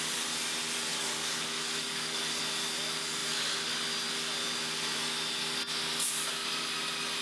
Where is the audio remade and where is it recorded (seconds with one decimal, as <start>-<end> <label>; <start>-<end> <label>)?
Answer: 0.0-0.9 recorded; 0.9-2.4 remade; 2.4-7.2 recorded